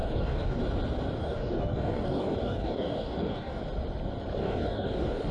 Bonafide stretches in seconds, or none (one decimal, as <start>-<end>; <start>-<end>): 0.6-1.2; 3.6-4.4